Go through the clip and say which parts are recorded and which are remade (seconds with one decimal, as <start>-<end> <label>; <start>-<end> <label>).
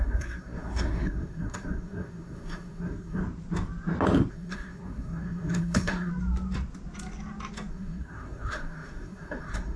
0.0-3.2 remade; 3.2-4.3 recorded; 4.3-6.1 remade; 6.1-7.7 recorded; 7.7-9.8 remade